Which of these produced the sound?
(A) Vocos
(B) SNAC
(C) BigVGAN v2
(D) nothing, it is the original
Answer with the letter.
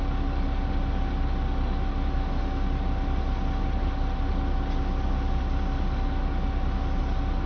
D